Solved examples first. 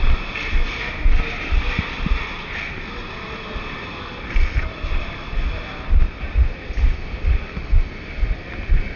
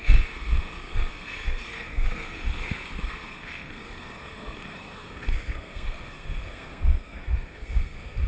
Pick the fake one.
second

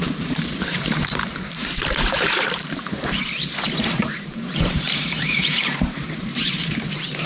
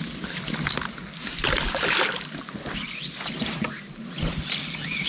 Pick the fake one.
first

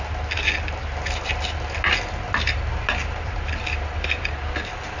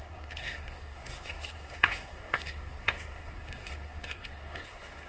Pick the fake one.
second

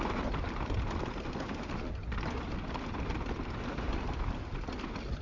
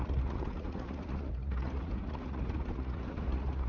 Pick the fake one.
second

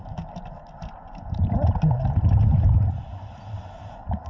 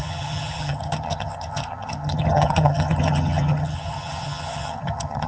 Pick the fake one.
second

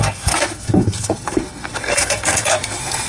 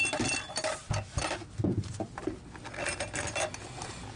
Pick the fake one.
first